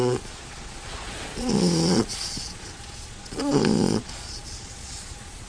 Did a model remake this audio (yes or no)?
yes